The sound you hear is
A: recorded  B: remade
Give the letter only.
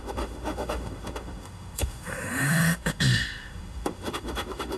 B